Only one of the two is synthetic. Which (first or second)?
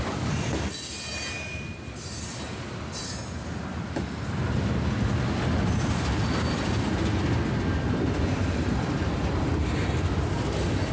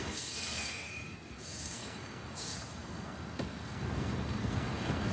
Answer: second